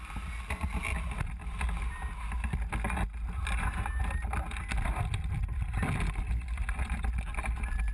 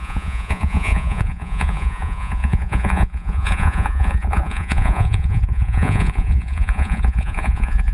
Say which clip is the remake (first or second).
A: second